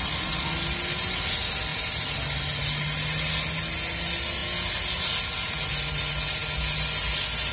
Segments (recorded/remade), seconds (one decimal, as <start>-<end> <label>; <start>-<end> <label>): 0.0-7.5 recorded